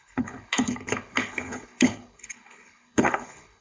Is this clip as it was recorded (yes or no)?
no